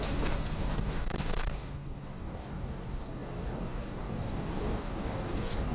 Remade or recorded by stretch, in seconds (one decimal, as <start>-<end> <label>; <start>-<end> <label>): 0.0-5.7 remade